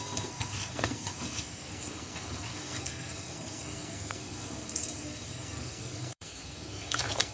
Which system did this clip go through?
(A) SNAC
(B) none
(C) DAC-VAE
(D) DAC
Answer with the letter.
A